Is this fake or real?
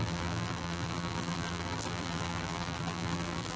fake